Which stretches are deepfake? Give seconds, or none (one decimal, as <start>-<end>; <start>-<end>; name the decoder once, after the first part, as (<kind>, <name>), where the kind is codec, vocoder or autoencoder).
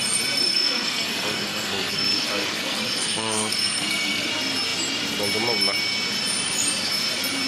0.5-4.3 (codec, SNAC)